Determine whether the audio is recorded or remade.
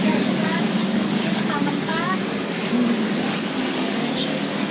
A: remade